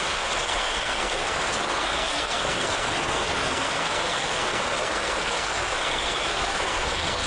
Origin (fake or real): fake